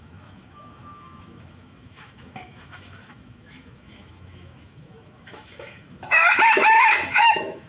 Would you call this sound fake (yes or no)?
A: yes